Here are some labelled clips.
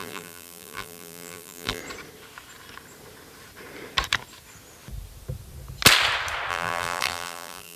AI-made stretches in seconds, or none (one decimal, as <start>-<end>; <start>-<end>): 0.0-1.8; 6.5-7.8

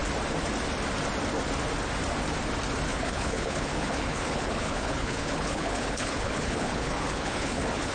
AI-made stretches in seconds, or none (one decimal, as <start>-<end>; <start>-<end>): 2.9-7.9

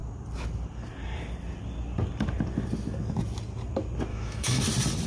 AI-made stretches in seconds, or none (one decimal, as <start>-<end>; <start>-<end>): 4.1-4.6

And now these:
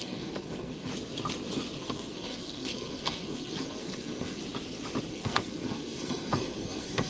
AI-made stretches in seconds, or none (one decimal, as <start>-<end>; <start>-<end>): 0.0-0.9; 1.8-4.4; 5.1-7.1

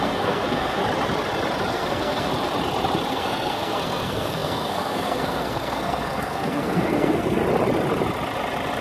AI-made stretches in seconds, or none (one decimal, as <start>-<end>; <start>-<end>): 0.0-0.8; 1.7-2.3; 3.1-7.4

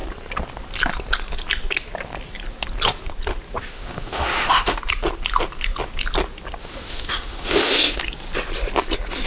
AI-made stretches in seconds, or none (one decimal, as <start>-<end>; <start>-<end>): 3.6-4.8; 6.6-8.0

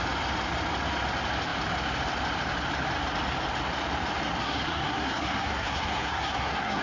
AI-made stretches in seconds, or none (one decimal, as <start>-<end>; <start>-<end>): 4.4-6.8